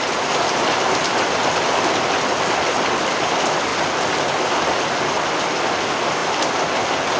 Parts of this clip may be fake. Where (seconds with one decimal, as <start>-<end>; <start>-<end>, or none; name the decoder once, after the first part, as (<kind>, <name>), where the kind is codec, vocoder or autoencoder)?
none